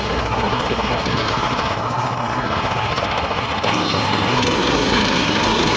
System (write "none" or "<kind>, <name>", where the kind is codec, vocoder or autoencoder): codec, SNAC